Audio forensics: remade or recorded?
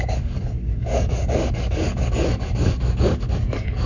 remade